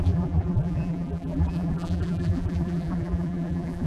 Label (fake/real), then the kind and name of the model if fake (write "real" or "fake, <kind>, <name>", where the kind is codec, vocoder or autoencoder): fake, vocoder, BigVGAN v2